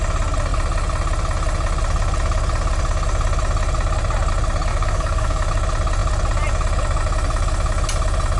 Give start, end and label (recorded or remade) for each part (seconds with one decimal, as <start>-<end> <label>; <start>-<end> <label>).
0.0-4.7 recorded; 4.7-5.5 remade; 5.5-8.4 recorded